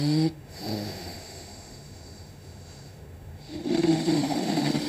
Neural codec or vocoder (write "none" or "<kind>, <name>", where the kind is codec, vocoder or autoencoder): autoencoder, DAC-VAE